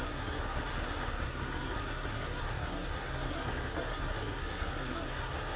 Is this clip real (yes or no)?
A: no